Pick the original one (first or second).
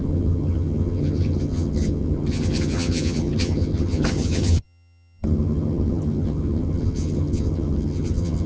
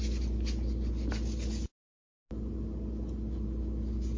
second